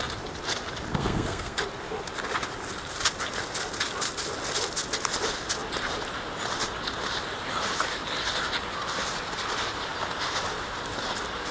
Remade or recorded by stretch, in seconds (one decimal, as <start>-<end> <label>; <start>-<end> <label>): 0.0-0.9 recorded; 0.9-1.6 remade; 1.6-11.5 recorded